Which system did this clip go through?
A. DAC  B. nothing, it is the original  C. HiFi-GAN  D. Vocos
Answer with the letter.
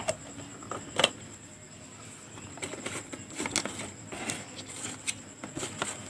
B